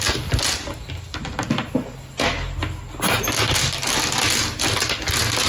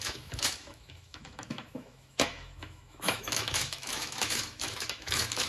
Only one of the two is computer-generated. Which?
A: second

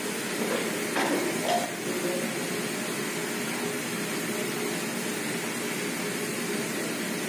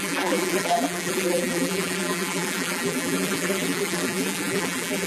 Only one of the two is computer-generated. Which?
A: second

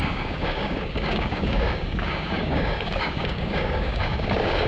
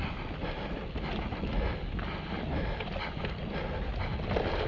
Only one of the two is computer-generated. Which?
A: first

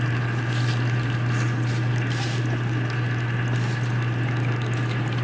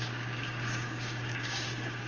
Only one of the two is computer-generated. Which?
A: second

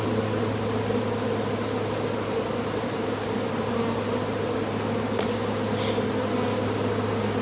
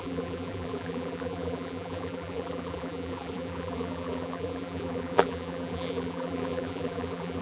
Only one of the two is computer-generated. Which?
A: second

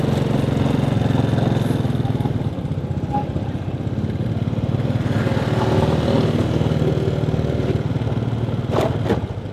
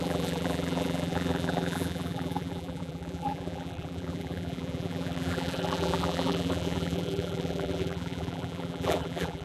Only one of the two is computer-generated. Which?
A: second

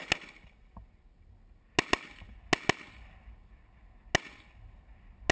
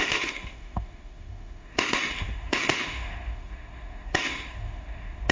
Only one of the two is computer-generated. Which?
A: second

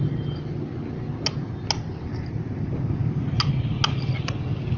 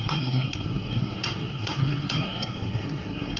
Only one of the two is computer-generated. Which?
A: second